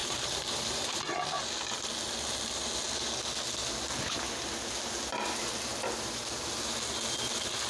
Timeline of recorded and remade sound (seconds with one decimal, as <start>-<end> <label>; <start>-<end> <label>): 0.0-1.0 remade; 1.0-7.7 recorded